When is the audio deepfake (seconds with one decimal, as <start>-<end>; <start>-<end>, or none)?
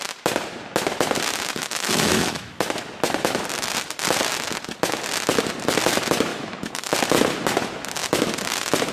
1.6-2.5; 6.3-6.9